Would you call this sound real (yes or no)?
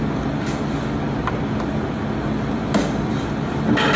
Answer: yes